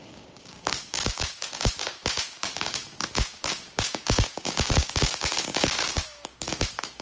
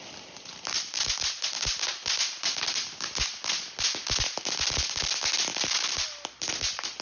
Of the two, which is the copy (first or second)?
first